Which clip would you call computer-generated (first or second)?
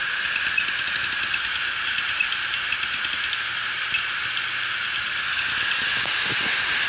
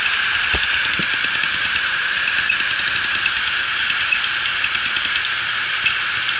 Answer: second